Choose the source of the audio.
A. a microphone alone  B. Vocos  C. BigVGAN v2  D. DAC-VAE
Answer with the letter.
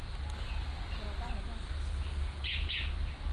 A